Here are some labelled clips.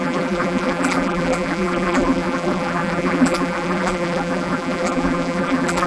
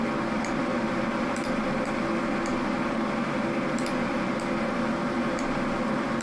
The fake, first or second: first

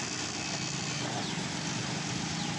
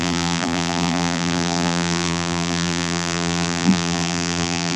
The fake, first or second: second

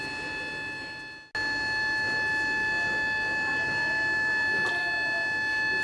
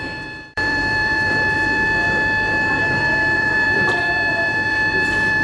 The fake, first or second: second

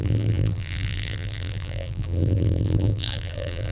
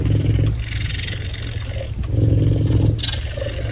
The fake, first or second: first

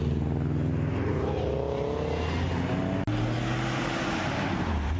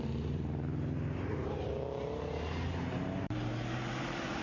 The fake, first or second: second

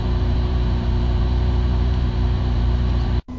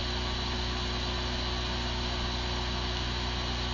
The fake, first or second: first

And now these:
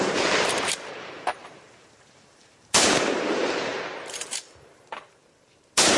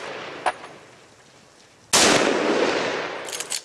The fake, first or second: first